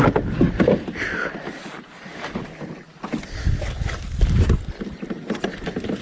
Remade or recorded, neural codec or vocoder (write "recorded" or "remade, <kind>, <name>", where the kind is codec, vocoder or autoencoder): recorded